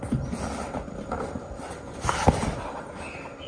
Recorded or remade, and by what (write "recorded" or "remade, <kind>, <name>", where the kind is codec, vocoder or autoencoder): recorded